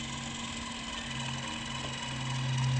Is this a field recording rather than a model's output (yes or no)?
yes